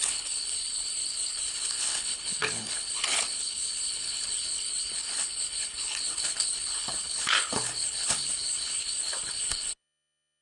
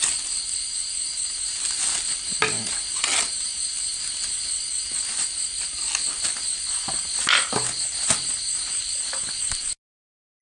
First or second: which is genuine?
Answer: second